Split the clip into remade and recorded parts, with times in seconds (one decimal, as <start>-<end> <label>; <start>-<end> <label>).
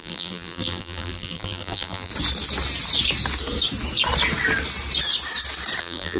0.0-2.1 remade; 2.1-5.8 recorded; 5.8-6.2 remade